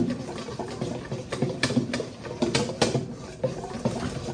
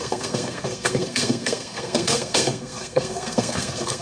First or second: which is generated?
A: second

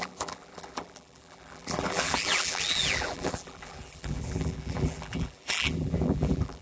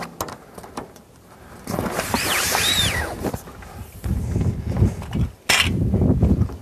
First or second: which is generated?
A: first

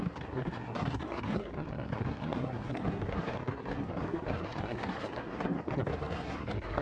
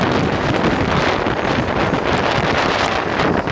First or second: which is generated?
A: first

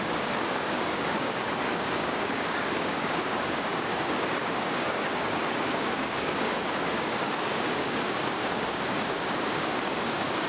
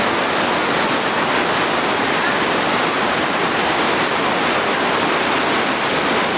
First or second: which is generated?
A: first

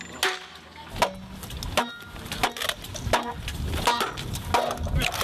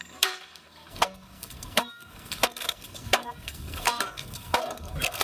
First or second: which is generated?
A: second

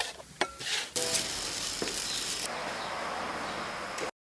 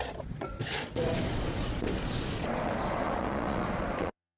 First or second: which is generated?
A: second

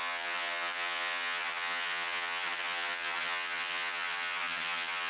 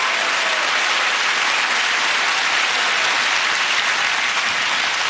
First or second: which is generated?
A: first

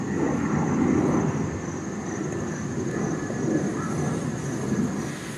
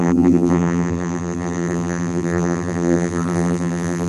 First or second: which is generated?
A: second